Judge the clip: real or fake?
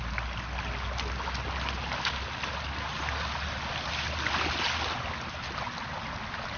real